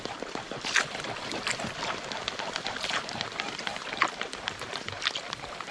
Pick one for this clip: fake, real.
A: real